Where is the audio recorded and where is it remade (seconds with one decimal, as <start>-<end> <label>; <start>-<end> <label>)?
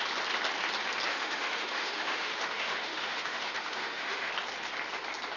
0.0-1.1 recorded; 1.1-4.3 remade; 4.3-5.4 recorded